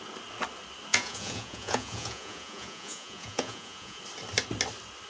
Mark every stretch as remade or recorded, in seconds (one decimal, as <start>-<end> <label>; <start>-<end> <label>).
0.0-0.9 recorded; 0.9-4.0 remade; 4.0-5.1 recorded